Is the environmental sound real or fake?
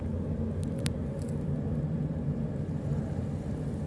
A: real